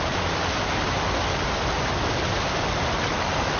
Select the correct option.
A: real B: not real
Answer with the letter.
A